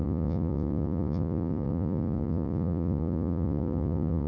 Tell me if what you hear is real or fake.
fake